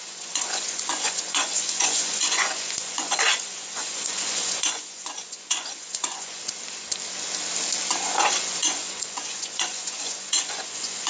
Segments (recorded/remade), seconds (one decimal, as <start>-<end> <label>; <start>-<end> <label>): 0.0-6.4 remade; 6.4-8.0 recorded; 8.0-11.1 remade